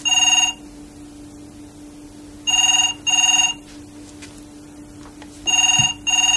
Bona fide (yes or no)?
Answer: yes